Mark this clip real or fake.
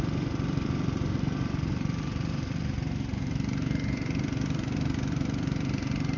fake